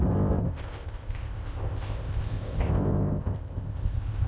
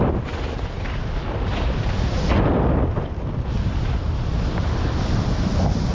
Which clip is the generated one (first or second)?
first